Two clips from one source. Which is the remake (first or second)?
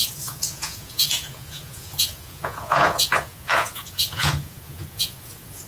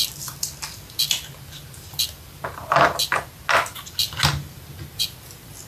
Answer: first